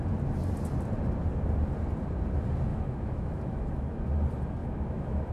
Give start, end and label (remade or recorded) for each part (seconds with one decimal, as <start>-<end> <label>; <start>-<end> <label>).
0.0-2.7 recorded; 2.7-4.0 remade; 4.0-4.6 recorded; 4.6-5.3 remade